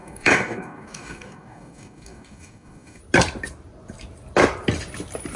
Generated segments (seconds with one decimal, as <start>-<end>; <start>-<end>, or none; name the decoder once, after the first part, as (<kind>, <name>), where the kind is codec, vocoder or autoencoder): 0.0-3.0 (codec, DAC)

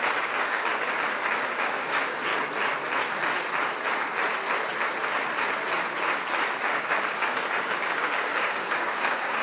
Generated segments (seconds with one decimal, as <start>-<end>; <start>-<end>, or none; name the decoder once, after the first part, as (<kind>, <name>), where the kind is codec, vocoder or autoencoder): 0.0-0.7 (codec, DAC); 1.5-2.3; 6.8-9.4

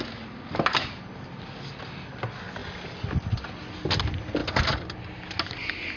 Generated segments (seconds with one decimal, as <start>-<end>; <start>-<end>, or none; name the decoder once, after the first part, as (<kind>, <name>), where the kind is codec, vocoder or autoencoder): none

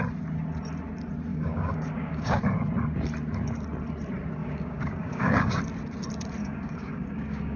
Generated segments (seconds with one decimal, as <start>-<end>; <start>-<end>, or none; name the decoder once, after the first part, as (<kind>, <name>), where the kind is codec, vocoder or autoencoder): 1.3-2.4 (codec, DAC); 4.4-5.6; 6.4-7.6

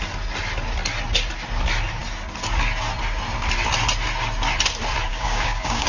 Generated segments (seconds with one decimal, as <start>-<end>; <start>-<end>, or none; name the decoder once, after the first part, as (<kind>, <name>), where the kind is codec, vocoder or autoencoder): 5.1-5.9 (codec, DAC)